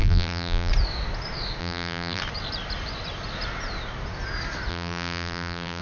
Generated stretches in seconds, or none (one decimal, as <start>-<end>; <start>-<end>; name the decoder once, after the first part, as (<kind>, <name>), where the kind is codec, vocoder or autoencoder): 0.0-0.7 (vocoder, BigVGAN v2); 1.6-2.2; 4.7-5.8